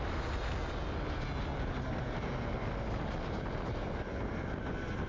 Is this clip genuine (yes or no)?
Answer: yes